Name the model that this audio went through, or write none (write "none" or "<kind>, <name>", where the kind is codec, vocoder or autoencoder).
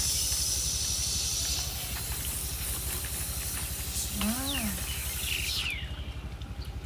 none